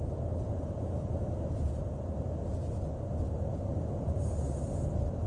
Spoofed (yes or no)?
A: no